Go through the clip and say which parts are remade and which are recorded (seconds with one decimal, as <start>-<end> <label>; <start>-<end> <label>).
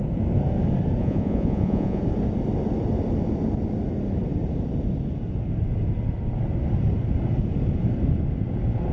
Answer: 0.0-1.0 recorded; 1.0-2.0 remade; 2.0-8.9 recorded